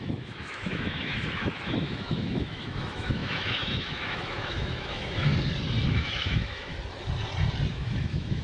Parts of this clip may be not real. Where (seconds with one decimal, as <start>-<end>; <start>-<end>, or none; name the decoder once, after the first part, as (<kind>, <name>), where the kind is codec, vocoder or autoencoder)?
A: 0.0-5.3 (autoencoder, DAC-VAE); 5.9-6.7; 7.7-8.4